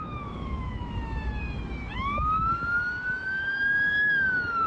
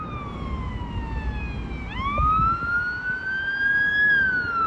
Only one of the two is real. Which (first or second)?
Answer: second